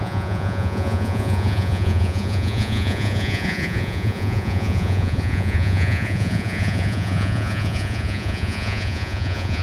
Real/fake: fake